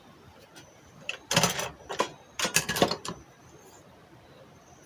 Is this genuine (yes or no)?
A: no